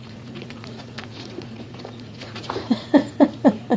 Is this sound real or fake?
fake